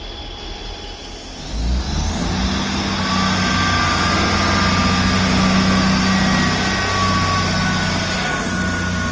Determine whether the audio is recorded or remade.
recorded